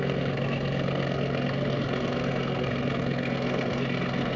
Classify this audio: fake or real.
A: fake